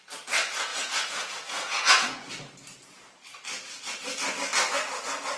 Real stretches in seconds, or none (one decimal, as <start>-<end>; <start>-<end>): 0.0-0.7; 2.3-5.4